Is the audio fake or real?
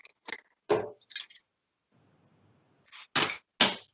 real